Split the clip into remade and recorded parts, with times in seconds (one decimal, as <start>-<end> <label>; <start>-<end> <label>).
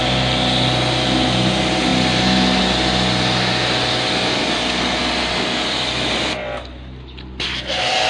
0.0-8.1 recorded